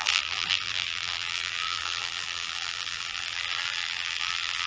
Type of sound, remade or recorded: remade